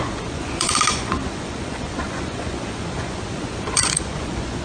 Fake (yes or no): yes